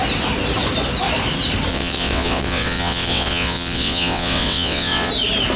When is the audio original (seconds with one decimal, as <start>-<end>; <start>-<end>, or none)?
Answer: 0.0-1.7; 5.1-5.6